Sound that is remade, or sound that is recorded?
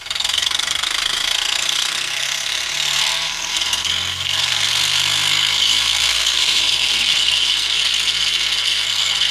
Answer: remade